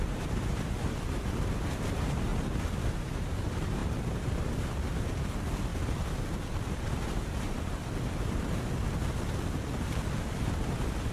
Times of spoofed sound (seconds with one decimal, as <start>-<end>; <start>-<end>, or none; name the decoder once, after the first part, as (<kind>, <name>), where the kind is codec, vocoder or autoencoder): 0.0-2.3 (vocoder, BigVGAN v2); 2.9-5.7; 6.7-7.8; 10.2-11.1